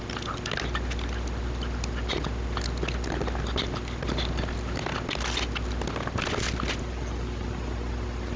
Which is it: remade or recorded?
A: recorded